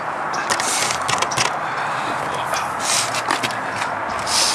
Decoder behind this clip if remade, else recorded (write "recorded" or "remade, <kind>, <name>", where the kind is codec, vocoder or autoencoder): recorded